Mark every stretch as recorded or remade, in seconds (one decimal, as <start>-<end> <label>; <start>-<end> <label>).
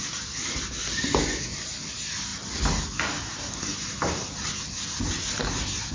0.0-5.9 recorded